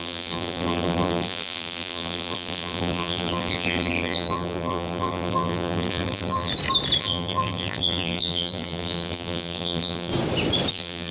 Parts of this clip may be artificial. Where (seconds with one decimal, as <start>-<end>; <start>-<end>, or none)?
0.0-6.5; 7.0-10.1; 10.7-11.1